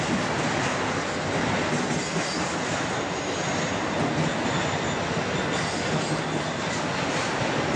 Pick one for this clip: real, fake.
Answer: real